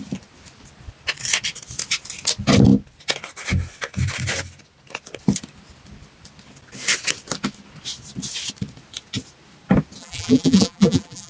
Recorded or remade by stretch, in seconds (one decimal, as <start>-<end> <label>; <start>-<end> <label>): 0.0-10.0 recorded; 10.0-11.3 remade